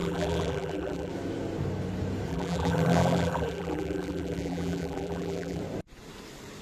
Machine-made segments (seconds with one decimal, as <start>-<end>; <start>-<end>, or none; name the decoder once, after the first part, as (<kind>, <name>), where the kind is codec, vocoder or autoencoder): 0.0-1.1 (vocoder, BigVGAN v2); 2.3-5.6